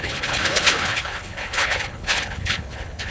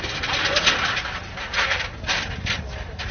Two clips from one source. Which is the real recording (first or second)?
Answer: second